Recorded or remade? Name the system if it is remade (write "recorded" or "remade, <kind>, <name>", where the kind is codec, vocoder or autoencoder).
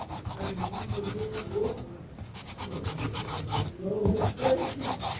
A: remade, codec, DAC